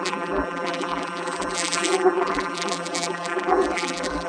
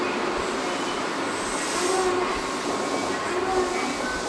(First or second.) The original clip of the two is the second